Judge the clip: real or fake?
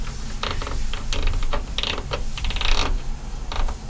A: real